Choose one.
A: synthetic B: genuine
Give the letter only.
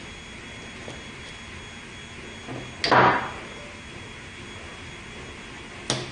B